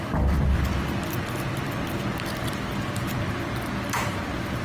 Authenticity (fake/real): real